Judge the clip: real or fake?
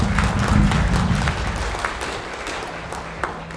real